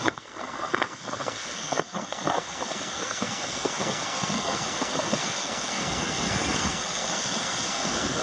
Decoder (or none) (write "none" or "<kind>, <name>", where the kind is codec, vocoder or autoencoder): codec, SNAC